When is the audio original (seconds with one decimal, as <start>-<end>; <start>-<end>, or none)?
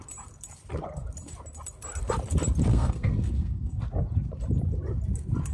0.0-2.7; 3.8-5.5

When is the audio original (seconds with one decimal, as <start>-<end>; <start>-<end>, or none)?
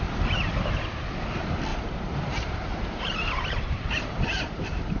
0.0-1.7